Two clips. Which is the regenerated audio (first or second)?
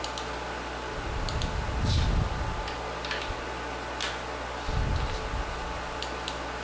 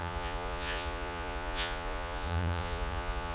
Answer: second